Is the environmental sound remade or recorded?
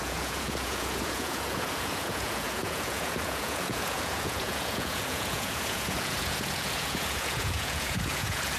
remade